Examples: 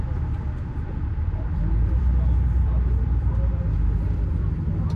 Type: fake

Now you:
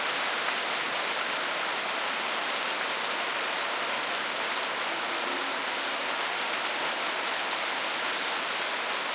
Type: real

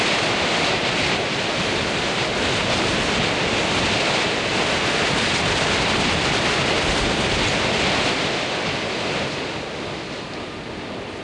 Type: real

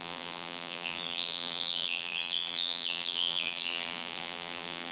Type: fake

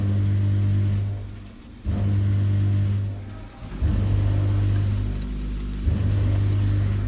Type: real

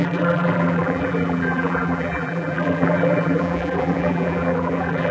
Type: fake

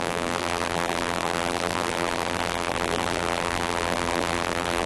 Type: fake